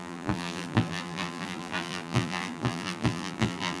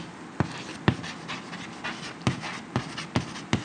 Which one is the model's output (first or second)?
first